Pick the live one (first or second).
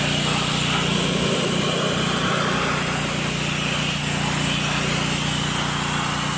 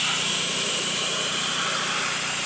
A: first